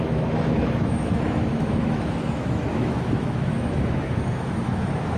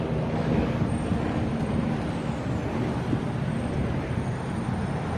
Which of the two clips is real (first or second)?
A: second